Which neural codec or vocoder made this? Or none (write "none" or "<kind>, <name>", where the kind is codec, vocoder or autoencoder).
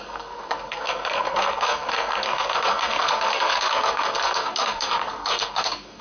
codec, SNAC